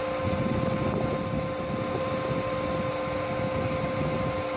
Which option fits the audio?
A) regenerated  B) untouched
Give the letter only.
B